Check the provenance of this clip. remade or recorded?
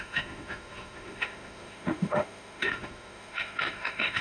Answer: remade